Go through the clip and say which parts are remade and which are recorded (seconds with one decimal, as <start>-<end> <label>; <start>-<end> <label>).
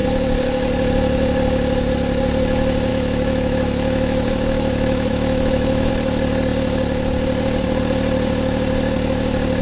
0.0-2.9 recorded; 2.9-5.9 remade; 5.9-9.6 recorded